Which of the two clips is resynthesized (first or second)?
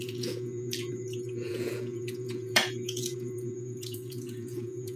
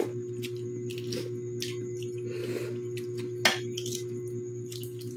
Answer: first